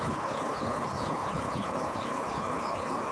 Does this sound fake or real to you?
fake